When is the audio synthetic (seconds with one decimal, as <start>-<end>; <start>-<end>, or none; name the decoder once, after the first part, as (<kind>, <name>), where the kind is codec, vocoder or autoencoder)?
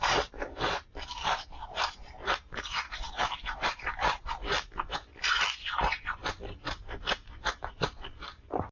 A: 0.0-4.2 (vocoder, BigVGAN v2); 7.6-8.7